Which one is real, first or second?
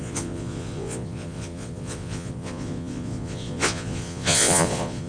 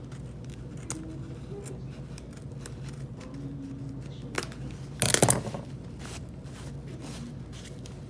second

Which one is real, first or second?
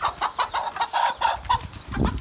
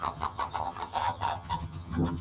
first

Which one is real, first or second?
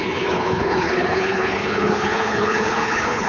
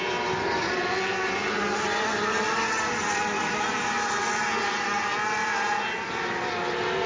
second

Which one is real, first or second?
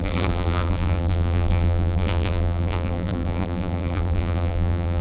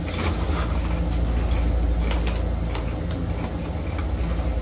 second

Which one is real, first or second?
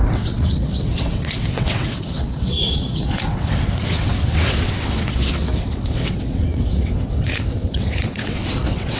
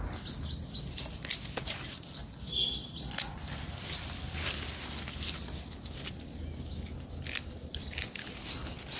second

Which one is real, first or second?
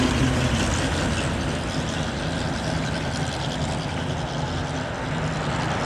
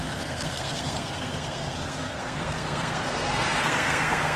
first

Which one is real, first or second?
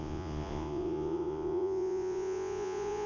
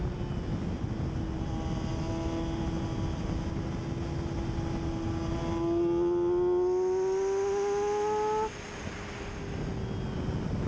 second